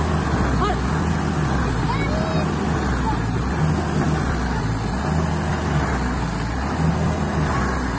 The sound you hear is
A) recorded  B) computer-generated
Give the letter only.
A